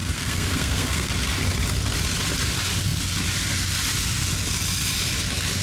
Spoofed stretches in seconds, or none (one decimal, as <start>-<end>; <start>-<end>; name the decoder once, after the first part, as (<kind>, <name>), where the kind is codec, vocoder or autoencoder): 0.0-1.1 (codec, SNAC)